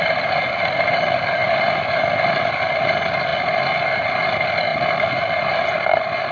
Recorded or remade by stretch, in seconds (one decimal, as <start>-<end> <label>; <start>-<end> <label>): 0.0-6.3 recorded